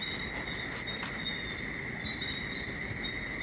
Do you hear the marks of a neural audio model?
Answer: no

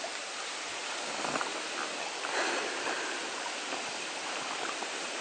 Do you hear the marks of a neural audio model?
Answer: no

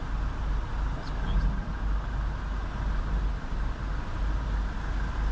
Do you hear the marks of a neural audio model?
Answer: no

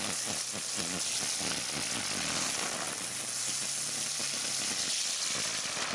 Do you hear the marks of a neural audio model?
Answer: no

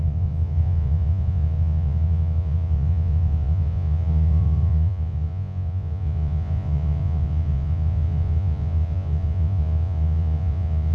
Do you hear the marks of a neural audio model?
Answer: yes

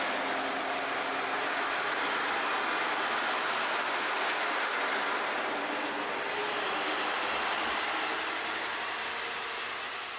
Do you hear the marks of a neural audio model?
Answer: no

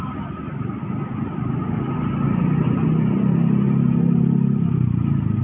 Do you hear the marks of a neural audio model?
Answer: no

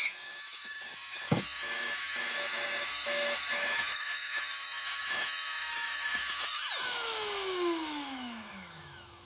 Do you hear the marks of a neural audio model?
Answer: yes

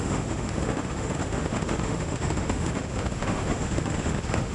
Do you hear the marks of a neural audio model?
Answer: yes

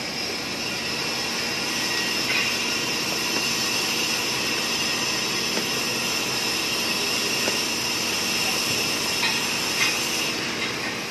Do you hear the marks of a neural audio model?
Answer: no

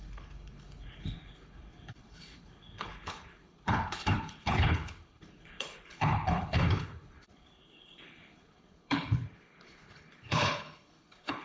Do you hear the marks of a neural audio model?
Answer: yes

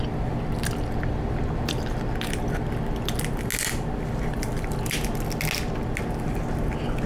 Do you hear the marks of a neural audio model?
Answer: no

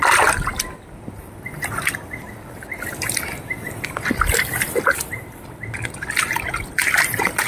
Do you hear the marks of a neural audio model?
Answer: no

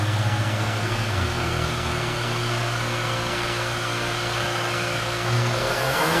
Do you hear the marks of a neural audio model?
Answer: yes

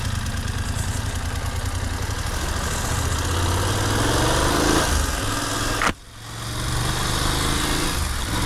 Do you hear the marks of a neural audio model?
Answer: no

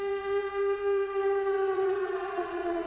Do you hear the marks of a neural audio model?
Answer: yes